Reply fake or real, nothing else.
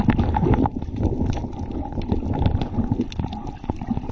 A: real